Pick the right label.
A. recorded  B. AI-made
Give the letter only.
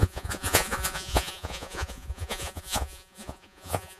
B